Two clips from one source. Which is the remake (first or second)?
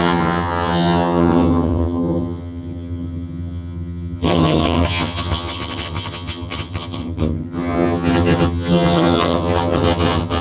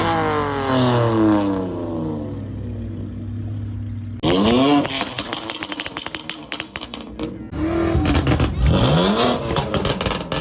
first